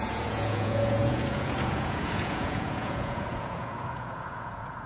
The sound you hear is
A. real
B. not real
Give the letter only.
B